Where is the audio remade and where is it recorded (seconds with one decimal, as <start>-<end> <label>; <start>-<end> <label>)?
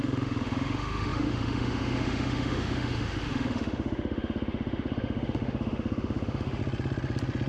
0.0-6.6 remade; 6.6-7.5 recorded